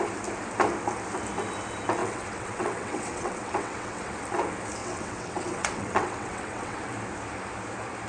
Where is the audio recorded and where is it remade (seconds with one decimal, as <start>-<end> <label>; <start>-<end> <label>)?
0.0-2.0 recorded; 2.0-4.1 remade; 4.1-4.8 recorded; 4.8-6.8 remade; 6.8-8.1 recorded